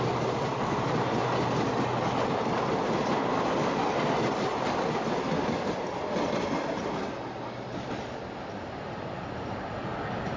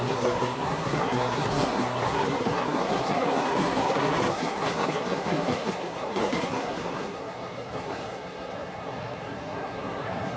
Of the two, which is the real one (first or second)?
first